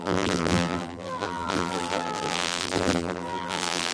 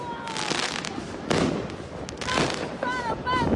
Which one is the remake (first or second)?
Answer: first